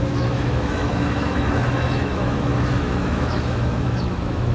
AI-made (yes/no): yes